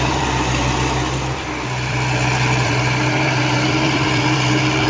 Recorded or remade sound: remade